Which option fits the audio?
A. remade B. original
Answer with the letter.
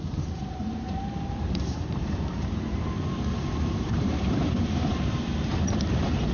A